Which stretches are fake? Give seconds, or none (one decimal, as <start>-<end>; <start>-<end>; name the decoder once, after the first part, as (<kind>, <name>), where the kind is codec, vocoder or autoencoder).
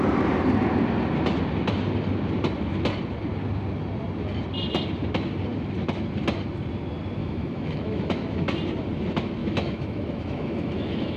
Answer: 7.2-8.5 (autoencoder, DAC-VAE); 9.4-11.2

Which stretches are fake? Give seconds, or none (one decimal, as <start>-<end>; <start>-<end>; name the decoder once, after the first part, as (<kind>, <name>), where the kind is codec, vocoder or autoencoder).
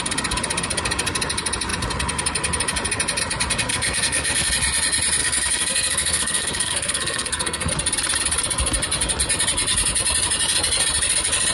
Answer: 3.7-4.5 (codec, SNAC); 5.2-7.7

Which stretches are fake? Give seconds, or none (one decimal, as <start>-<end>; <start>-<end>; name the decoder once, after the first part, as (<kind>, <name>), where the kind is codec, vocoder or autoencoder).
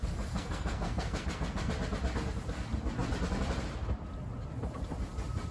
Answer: 0.0-1.7 (codec, SNAC)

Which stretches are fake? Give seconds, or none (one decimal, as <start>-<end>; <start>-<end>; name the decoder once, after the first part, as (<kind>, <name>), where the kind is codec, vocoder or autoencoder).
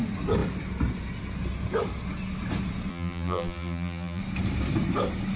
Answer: 2.9-4.2 (vocoder, BigVGAN v2)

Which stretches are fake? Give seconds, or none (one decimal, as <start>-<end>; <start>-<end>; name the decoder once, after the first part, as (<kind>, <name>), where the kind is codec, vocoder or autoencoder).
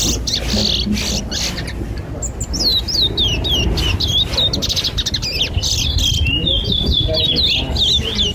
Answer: none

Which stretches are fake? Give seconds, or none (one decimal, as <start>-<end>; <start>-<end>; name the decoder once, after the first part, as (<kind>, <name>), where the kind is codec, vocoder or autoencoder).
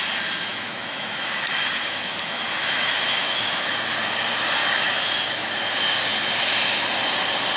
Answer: 0.5-3.7 (autoencoder, DAC-VAE); 4.6-5.6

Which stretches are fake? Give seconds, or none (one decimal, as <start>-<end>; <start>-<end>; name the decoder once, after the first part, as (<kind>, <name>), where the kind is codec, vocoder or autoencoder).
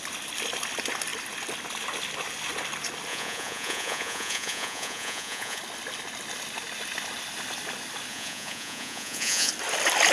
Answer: 3.1-5.6 (vocoder, Vocos); 8.1-9.5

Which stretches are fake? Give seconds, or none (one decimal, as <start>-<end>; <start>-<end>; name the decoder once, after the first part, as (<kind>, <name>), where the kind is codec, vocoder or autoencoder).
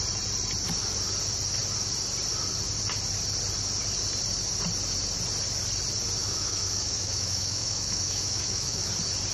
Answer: 6.2-8.9 (autoencoder, DAC-VAE)